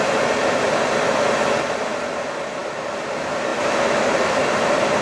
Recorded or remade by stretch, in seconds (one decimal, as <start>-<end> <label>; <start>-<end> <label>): 0.0-5.0 recorded